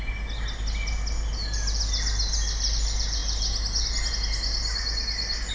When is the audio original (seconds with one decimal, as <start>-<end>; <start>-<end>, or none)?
0.0-5.5